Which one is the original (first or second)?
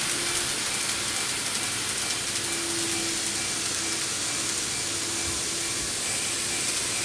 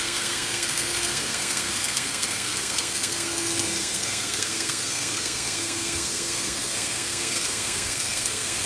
first